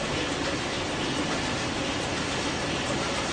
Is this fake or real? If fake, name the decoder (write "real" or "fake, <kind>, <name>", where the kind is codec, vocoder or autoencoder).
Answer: real